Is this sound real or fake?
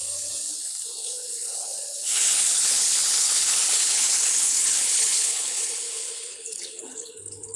fake